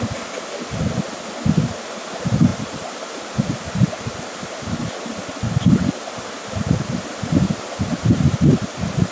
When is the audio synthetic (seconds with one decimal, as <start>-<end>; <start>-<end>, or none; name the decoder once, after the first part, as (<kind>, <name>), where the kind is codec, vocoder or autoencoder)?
none